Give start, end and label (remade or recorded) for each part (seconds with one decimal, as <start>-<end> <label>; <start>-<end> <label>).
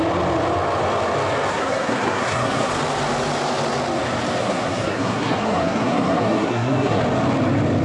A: 0.0-1.5 recorded; 1.5-2.7 remade; 2.7-4.4 recorded; 4.4-7.0 remade; 7.0-7.8 recorded